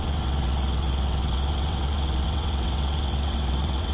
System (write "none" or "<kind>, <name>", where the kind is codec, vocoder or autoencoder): vocoder, WaveNeXt